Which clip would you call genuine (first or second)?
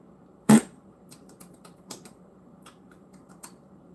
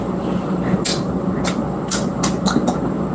second